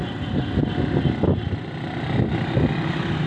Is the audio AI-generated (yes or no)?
no